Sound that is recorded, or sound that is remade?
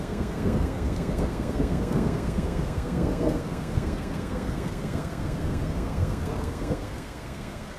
remade